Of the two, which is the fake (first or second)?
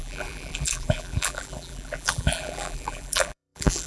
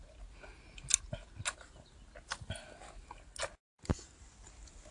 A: first